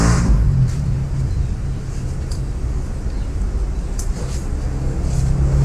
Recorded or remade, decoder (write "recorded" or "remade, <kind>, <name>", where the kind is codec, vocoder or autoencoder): recorded